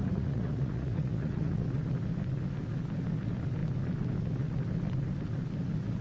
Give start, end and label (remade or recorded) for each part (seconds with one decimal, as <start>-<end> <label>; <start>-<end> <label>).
0.0-1.6 remade; 1.6-6.0 recorded